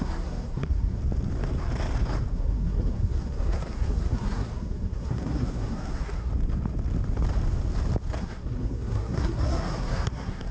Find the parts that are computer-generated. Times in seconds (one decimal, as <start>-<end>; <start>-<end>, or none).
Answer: 0.0-1.0; 2.3-6.3; 8.2-10.5